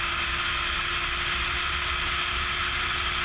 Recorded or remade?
recorded